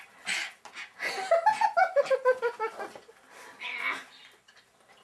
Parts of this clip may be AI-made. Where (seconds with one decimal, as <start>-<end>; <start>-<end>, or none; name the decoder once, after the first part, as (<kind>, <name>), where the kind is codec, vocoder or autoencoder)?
none